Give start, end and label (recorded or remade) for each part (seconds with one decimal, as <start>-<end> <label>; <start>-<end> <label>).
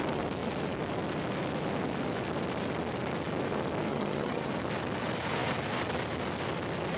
0.0-3.9 recorded; 3.9-4.5 remade; 4.5-7.0 recorded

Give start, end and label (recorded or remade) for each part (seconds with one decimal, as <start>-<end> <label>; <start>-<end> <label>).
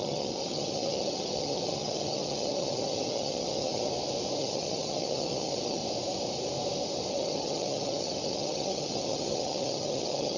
0.0-3.9 remade; 3.9-4.4 recorded; 4.4-5.8 remade; 5.8-7.1 recorded; 7.1-10.4 remade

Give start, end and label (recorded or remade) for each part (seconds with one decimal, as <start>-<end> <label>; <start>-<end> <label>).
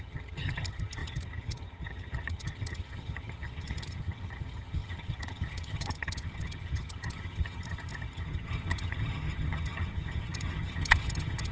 0.0-11.5 remade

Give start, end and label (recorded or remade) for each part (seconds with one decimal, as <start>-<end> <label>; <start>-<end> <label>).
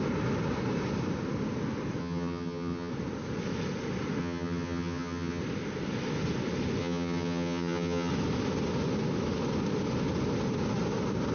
0.0-2.0 recorded; 2.0-2.9 remade; 2.9-4.2 recorded; 4.2-5.4 remade; 5.4-6.8 recorded; 6.8-8.1 remade; 8.1-11.3 recorded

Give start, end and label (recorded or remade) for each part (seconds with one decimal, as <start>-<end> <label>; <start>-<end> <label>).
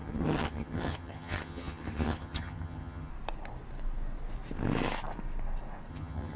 0.0-3.1 remade; 3.1-5.9 recorded; 5.9-6.4 remade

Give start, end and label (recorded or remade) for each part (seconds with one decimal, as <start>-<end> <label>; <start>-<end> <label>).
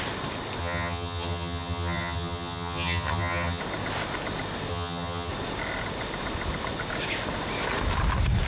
0.0-0.6 recorded; 0.6-3.6 remade; 3.6-4.7 recorded; 4.7-5.3 remade; 5.3-8.5 recorded